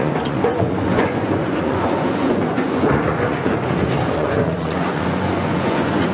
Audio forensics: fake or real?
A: fake